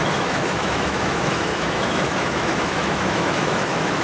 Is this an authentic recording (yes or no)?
no